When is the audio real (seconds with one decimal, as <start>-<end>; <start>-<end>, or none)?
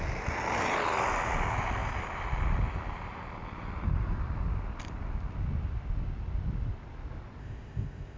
0.0-7.4